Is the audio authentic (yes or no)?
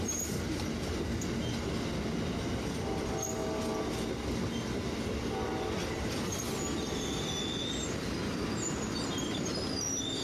yes